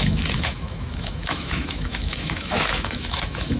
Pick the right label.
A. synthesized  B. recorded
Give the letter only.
A